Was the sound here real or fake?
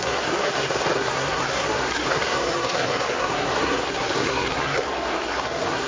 fake